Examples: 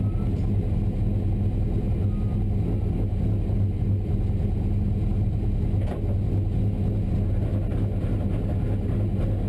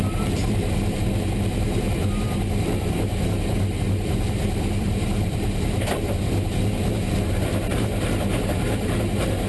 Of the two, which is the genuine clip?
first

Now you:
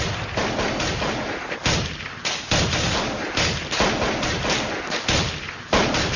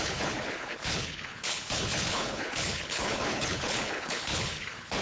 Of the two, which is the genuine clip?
first